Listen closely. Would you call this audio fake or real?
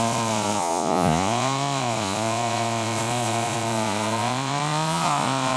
fake